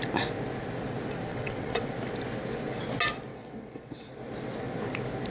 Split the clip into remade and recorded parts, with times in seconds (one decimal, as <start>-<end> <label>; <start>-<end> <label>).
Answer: 0.0-1.3 recorded; 1.3-1.9 remade; 1.9-3.3 recorded; 3.3-4.1 remade; 4.1-5.3 recorded